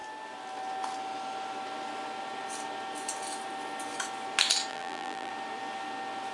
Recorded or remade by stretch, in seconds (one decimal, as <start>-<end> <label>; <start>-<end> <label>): 0.0-4.7 recorded; 4.7-5.3 remade; 5.3-6.3 recorded